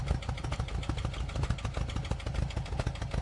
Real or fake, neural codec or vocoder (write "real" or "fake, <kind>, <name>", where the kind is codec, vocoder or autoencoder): real